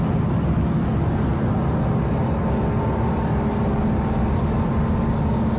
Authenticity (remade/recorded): recorded